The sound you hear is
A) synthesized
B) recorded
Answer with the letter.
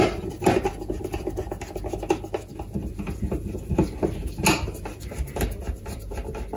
B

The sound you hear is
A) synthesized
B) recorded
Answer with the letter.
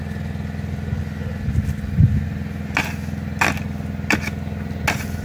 B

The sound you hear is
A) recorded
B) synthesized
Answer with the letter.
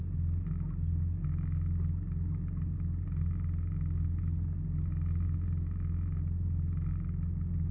A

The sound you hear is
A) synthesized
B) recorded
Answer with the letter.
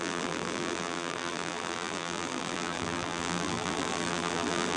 A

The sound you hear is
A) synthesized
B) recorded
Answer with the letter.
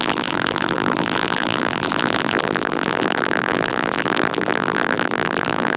A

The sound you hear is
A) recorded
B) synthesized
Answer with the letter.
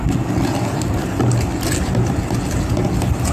A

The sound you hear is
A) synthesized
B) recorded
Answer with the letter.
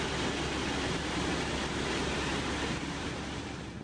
B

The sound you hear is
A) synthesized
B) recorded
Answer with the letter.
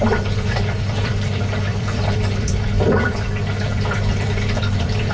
A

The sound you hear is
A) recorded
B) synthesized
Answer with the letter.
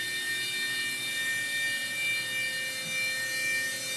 A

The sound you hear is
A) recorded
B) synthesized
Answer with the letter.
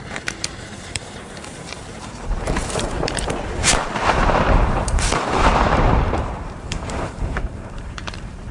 B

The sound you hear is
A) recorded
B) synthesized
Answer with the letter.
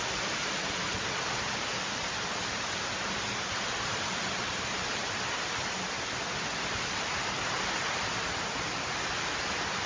B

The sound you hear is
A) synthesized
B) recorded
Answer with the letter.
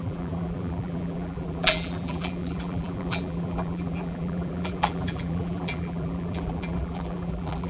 A